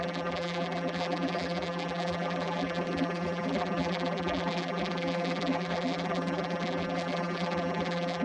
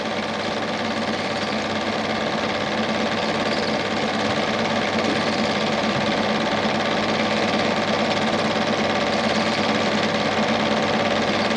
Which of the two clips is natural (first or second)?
second